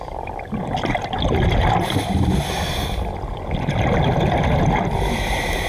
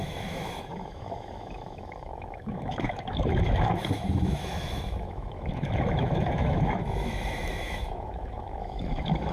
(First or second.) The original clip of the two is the first